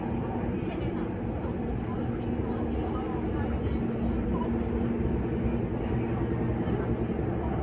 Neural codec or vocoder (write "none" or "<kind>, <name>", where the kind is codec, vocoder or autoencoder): none